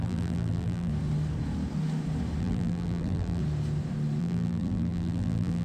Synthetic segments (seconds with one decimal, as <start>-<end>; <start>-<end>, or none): 0.0-0.9; 2.4-3.4; 4.2-5.6